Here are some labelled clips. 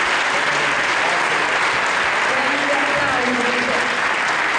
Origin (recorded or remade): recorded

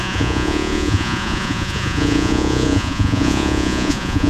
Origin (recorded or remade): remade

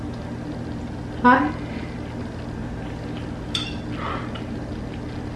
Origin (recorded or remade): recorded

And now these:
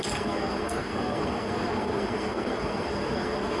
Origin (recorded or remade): remade